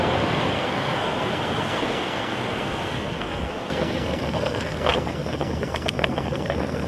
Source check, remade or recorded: remade